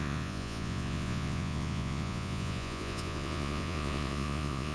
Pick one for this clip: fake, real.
fake